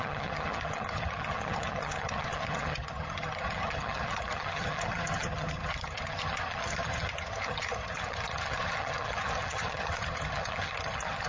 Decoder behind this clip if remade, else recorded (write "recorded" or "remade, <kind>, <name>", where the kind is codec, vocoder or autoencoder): remade, vocoder, HiFi-GAN